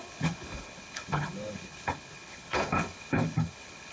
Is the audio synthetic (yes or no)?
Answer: yes